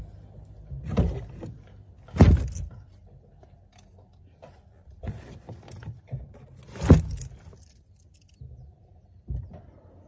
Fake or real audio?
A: real